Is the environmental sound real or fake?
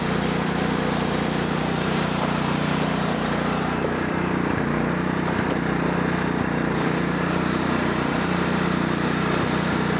fake